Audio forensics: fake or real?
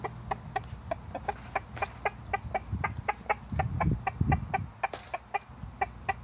real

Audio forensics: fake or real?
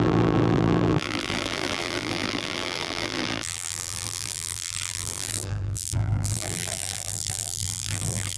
fake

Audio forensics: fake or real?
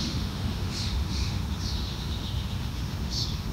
fake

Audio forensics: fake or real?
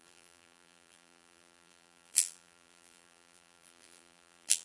fake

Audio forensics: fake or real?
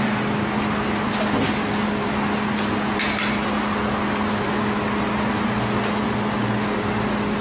real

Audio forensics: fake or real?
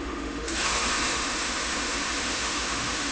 fake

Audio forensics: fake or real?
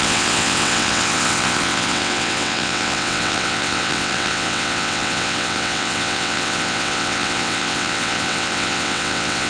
fake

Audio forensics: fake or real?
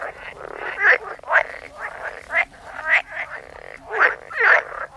real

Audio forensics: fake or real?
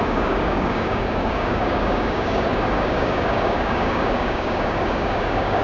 fake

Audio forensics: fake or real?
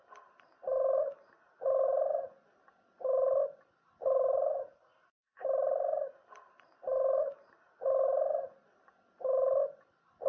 real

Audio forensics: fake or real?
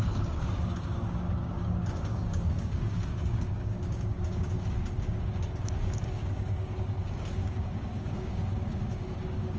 fake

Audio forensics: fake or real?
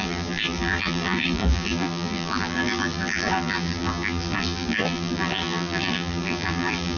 fake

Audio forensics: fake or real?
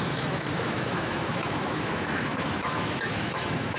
fake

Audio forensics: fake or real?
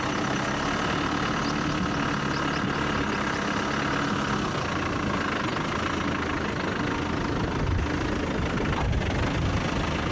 real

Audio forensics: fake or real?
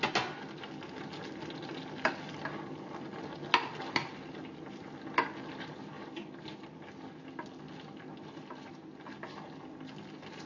real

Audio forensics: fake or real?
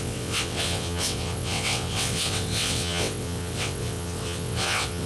fake